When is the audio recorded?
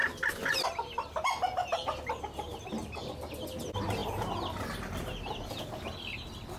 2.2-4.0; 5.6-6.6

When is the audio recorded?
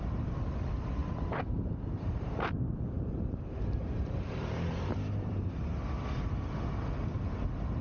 0.0-1.0; 5.7-7.8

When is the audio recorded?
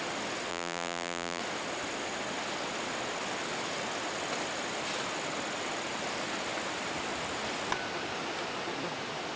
0.0-0.5; 1.4-9.4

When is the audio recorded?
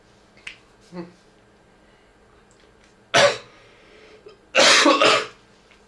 0.0-5.9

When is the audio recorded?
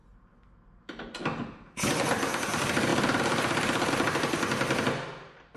0.0-5.6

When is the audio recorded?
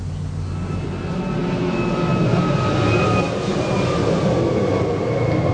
0.0-5.5